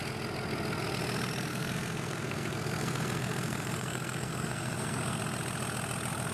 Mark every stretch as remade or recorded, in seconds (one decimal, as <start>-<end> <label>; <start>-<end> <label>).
0.0-1.5 recorded; 1.5-5.2 remade; 5.2-6.3 recorded

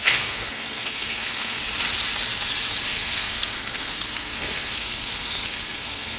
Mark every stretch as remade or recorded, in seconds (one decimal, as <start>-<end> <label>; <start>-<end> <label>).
0.0-1.6 remade; 1.6-2.9 recorded; 2.9-6.2 remade

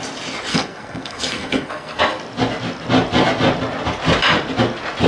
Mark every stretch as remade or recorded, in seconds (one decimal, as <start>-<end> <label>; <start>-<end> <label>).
0.0-0.5 recorded; 0.5-2.0 remade; 2.0-5.1 recorded

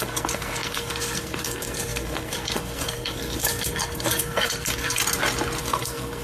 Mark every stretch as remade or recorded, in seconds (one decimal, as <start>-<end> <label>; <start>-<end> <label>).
0.0-5.0 remade; 5.0-5.6 recorded; 5.6-6.2 remade

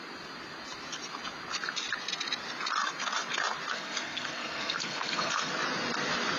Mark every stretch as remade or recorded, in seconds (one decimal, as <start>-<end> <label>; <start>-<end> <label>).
0.0-3.7 recorded; 3.7-5.5 remade; 5.5-6.4 recorded